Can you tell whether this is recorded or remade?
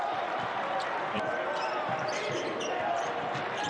remade